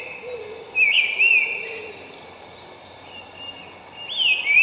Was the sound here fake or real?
real